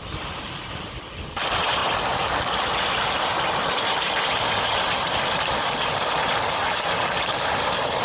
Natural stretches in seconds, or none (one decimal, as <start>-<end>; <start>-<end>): 0.0-8.0